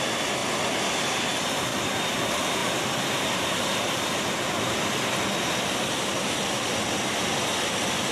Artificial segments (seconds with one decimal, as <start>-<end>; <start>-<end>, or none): 1.7-2.2